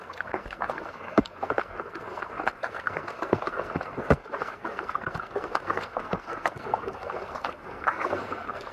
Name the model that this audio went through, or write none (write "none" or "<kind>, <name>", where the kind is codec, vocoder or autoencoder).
codec, SNAC